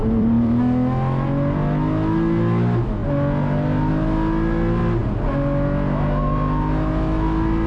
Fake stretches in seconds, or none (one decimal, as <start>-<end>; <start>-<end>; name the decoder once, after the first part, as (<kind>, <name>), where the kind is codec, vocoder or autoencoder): 0.0-0.6 (vocoder, BigVGAN v2)